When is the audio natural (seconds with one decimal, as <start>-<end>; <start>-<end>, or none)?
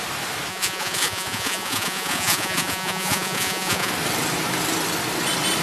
0.0-0.5; 3.9-5.6